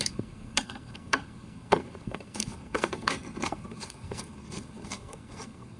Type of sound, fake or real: fake